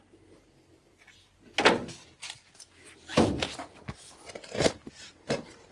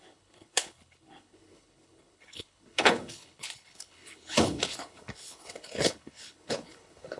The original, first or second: first